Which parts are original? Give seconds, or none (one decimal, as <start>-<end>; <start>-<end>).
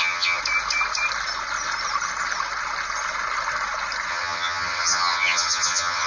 0.4-4.1